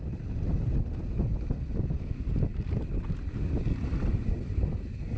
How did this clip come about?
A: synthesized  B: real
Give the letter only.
B